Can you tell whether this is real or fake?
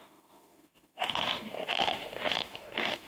fake